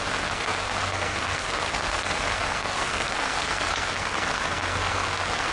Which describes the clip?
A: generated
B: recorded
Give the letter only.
A